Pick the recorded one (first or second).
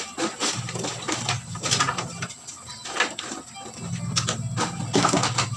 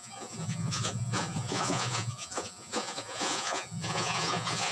first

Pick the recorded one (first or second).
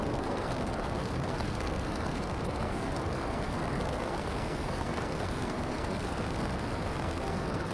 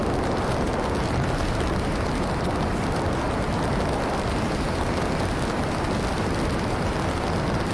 second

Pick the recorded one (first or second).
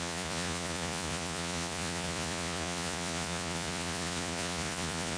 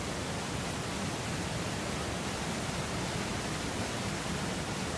second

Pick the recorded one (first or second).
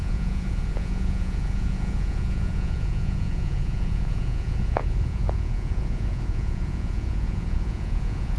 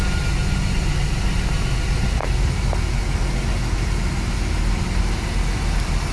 second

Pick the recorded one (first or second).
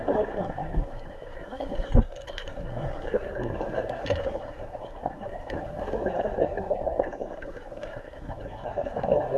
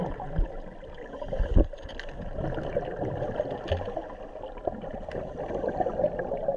second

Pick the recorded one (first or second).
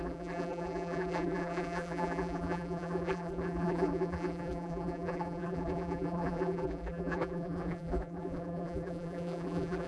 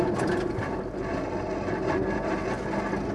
second